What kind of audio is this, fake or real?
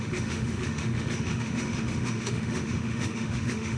fake